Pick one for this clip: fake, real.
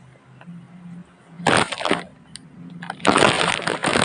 real